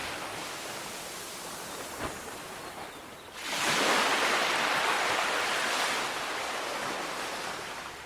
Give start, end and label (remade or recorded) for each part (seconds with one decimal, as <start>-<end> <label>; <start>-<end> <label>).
0.0-8.1 recorded